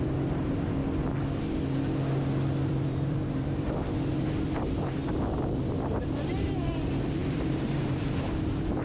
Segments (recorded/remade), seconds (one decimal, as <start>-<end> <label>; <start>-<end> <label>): 0.0-0.8 remade; 0.8-2.7 recorded; 2.7-5.0 remade; 5.0-6.0 recorded; 6.0-8.8 remade